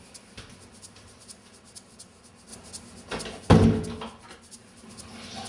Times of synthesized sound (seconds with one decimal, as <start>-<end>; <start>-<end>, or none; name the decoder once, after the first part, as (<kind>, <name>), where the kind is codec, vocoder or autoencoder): none